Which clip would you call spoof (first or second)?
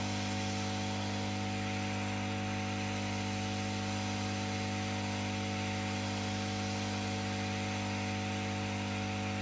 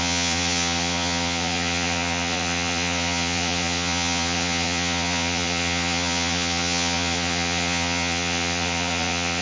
second